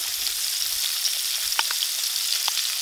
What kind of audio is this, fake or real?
fake